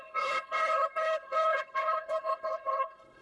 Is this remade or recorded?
remade